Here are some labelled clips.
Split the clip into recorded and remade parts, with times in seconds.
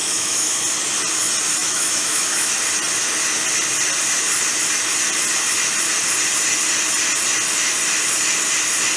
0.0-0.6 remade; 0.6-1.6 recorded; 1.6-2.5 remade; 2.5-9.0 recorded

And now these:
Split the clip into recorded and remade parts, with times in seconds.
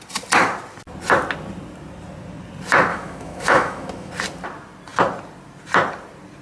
0.0-2.9 recorded; 2.9-4.1 remade; 4.1-6.4 recorded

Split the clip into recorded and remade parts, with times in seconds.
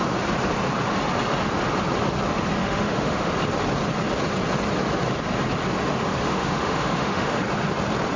0.0-2.6 recorded; 2.6-3.3 remade; 3.3-6.2 recorded; 6.2-7.4 remade; 7.4-8.2 recorded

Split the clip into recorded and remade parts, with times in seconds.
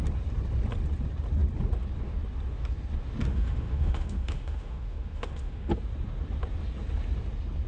0.0-3.3 recorded; 3.3-5.7 remade; 5.7-7.7 recorded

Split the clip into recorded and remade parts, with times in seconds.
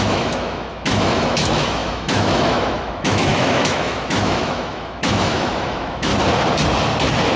0.0-6.1 remade; 6.1-7.4 recorded